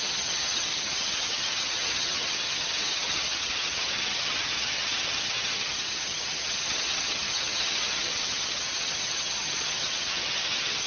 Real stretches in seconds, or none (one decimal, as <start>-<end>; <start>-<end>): none